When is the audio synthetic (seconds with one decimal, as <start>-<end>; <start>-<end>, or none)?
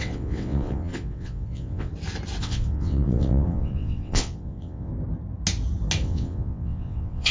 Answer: 0.0-1.9; 2.4-4.9; 6.0-7.3